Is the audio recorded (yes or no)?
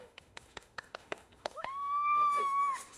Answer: no